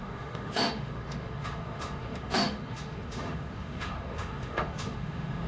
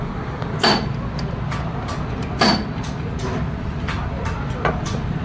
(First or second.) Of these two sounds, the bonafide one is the second